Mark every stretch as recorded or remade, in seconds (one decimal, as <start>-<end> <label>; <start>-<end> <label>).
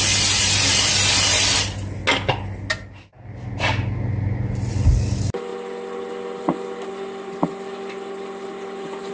0.0-9.1 recorded